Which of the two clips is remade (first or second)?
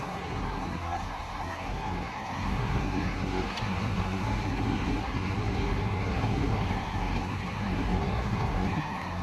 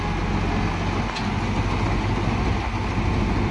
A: first